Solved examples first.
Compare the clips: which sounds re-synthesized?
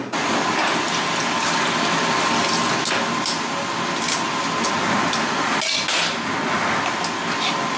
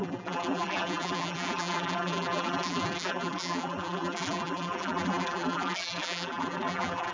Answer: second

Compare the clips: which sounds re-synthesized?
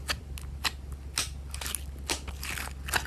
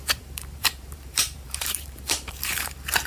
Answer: second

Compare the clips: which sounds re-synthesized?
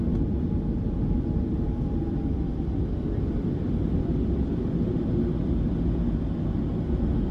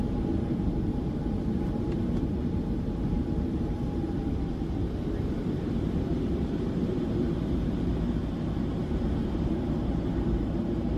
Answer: second